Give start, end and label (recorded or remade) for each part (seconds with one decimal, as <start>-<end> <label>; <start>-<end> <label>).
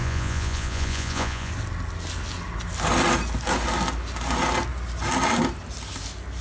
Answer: 0.0-1.5 remade; 1.5-6.4 recorded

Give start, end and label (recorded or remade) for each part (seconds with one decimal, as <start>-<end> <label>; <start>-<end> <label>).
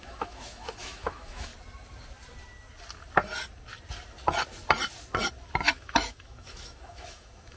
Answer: 0.0-1.5 remade; 1.5-5.7 recorded; 5.7-7.6 remade